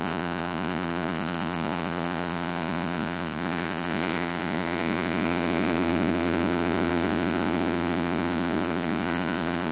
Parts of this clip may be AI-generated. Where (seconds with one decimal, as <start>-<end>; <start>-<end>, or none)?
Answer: 0.0-9.7